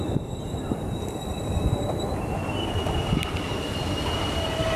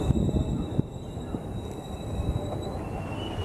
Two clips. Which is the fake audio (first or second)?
first